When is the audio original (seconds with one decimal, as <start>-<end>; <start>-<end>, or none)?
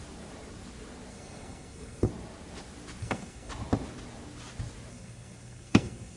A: 0.0-1.1; 2.1-3.0; 3.5-4.9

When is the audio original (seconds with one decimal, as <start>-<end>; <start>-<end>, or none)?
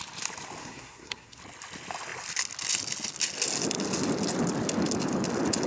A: 0.0-0.6; 1.4-5.7